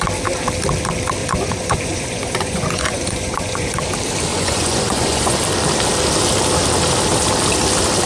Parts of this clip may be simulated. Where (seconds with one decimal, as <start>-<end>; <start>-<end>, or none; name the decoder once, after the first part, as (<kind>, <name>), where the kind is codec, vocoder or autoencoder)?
1.2-3.7 (vocoder, Vocos); 4.3-5.4